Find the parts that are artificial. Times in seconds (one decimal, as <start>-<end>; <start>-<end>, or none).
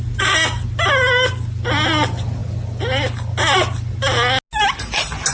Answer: none